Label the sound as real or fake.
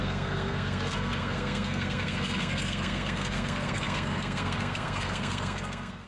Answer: fake